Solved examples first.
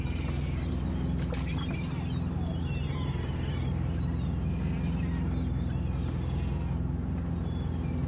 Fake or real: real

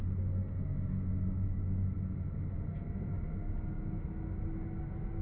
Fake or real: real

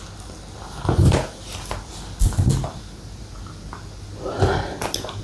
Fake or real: real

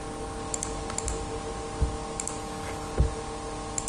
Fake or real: real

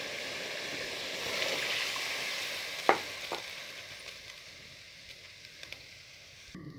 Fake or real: real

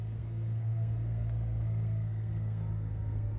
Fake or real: fake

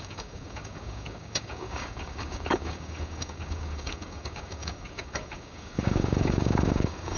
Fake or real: fake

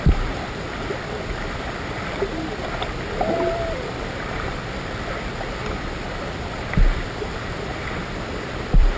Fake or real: fake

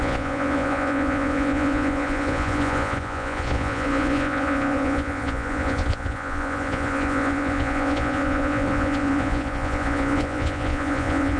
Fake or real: fake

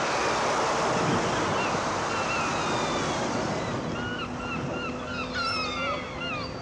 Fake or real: real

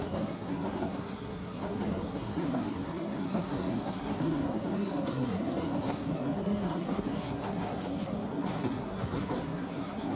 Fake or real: fake